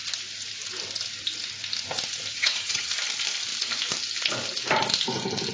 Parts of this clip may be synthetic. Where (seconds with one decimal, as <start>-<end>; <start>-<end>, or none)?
2.3-2.9